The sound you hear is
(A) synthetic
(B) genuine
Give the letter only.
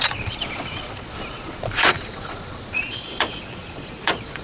A